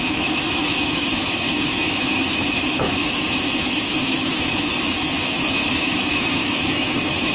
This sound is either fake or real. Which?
fake